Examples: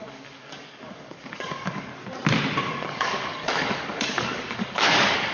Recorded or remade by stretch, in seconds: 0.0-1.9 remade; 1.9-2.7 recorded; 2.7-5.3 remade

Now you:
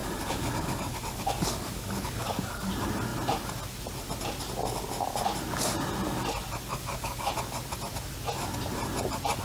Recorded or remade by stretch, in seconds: 0.0-2.7 remade; 2.7-6.7 recorded; 6.7-7.3 remade; 7.3-9.4 recorded

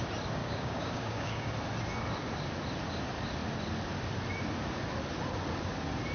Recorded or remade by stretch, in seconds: 0.0-0.4 recorded; 0.4-1.5 remade; 1.5-6.1 recorded

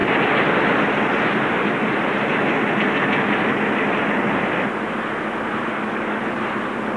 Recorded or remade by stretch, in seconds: 0.0-5.7 recorded; 5.7-6.2 remade; 6.2-7.0 recorded

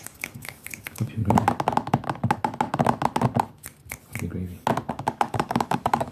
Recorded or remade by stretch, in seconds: 0.0-1.2 remade; 1.2-4.9 recorded; 4.9-6.1 remade

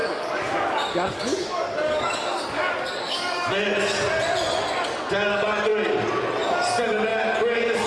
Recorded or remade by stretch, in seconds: 0.0-3.5 remade; 3.5-7.9 recorded